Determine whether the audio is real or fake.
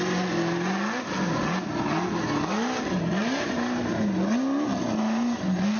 real